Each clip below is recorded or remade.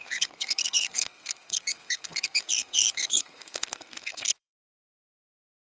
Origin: remade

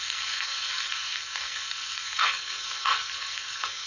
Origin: remade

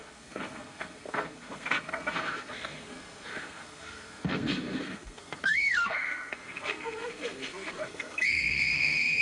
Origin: remade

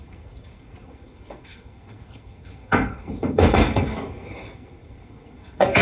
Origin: remade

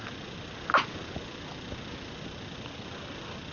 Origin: recorded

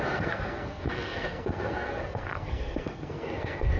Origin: remade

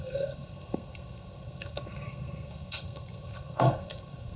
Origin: remade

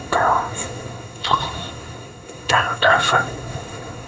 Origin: remade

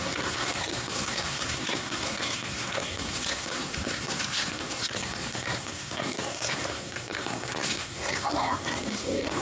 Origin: remade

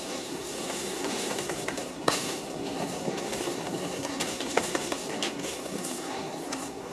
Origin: remade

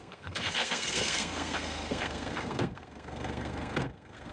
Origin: remade